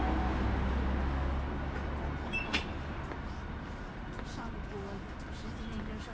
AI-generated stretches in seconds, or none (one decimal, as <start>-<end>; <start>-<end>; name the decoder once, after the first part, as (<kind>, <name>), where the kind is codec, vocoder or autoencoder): none